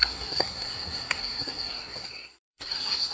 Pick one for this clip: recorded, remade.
remade